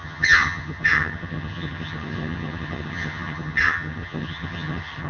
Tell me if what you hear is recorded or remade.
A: remade